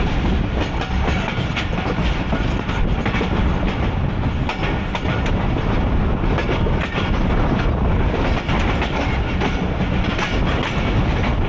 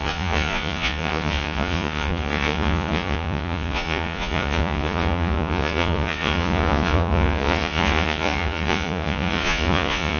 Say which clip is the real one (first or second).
first